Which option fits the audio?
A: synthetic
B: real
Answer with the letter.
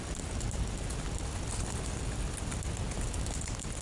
B